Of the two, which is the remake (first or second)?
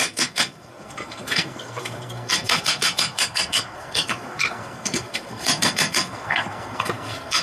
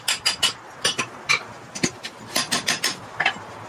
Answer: first